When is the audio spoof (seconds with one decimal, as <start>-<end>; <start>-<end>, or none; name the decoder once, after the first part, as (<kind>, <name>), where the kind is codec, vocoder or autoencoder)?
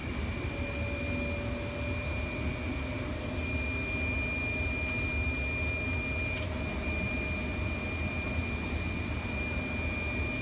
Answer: none